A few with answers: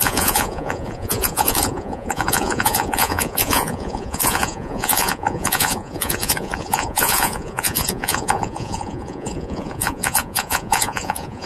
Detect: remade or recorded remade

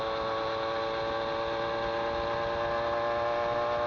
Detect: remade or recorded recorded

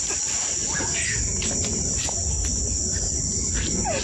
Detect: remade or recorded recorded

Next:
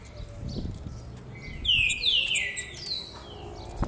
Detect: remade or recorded recorded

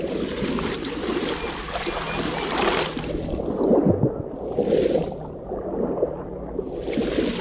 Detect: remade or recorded recorded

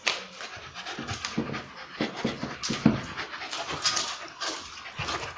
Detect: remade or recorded recorded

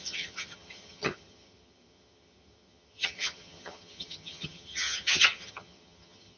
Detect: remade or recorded remade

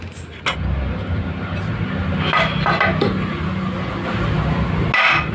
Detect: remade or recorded recorded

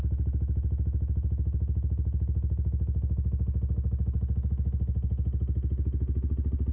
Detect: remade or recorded recorded